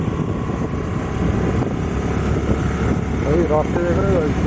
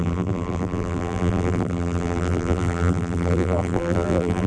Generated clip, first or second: second